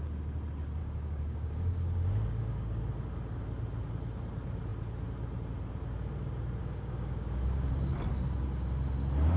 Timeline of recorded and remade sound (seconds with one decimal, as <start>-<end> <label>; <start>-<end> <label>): 0.0-0.8 recorded; 0.8-2.8 remade; 2.8-6.6 recorded; 6.6-7.7 remade; 7.7-9.4 recorded

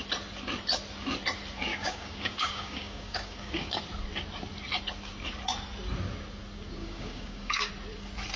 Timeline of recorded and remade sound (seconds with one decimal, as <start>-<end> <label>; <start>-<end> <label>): 0.0-1.7 recorded; 1.7-3.8 remade; 3.8-6.8 recorded; 6.8-7.7 remade; 7.7-8.4 recorded